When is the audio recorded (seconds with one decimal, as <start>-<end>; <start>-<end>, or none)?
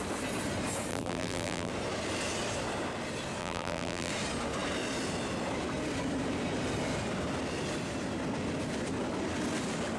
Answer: 0.0-0.9; 1.7-3.4; 4.1-10.0